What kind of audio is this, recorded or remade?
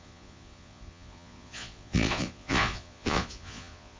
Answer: remade